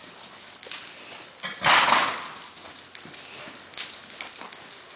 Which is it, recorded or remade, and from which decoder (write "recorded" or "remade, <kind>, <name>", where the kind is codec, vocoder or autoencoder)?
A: recorded